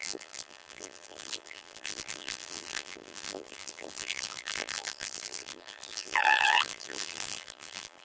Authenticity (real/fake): fake